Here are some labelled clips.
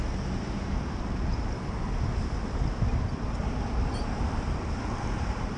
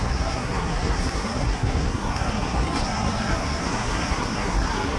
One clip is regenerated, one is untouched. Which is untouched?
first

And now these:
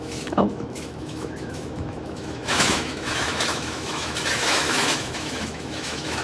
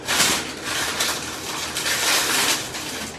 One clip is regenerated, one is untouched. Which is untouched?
second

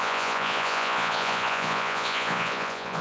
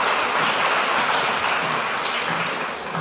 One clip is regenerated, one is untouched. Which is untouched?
second